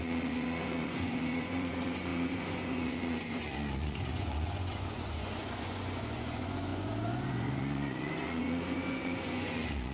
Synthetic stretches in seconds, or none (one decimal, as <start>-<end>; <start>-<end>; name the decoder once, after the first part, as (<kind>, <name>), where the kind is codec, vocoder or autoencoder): 0.0-9.9 (vocoder, Vocos)